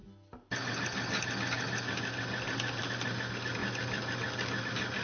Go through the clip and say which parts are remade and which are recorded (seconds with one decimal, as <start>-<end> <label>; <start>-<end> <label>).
0.0-5.0 recorded